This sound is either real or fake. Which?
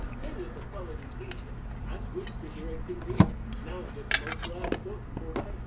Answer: real